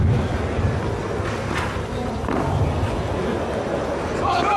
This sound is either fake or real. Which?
real